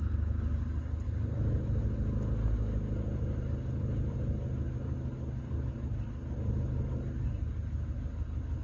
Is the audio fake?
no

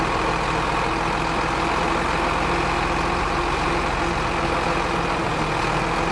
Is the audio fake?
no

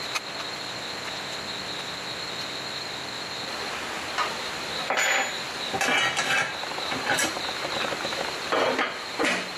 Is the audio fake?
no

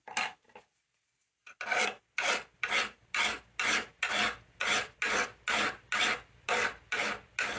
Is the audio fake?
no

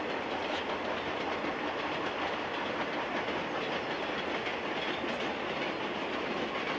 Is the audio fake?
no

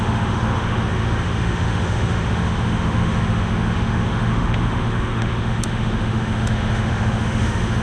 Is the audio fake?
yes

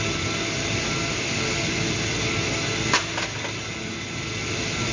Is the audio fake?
no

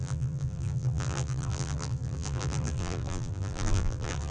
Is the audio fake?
yes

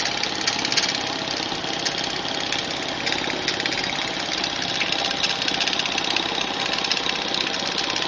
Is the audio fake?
no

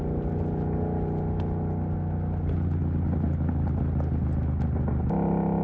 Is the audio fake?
no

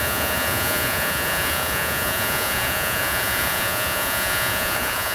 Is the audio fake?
yes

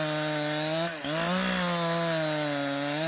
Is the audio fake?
no